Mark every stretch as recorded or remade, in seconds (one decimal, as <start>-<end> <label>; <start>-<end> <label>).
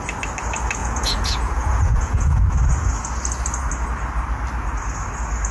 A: 0.0-0.8 recorded; 0.8-2.4 remade; 2.4-5.5 recorded